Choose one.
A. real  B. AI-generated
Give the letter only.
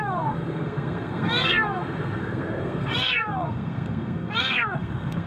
B